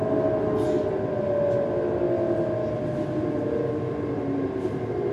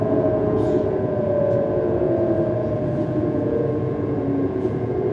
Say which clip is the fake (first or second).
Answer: second